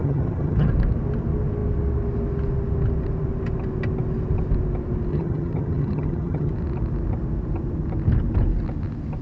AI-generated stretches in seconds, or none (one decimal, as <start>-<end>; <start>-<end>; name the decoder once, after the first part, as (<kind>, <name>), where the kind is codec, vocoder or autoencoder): 0.0-0.7 (vocoder, HiFi-GAN); 5.1-6.5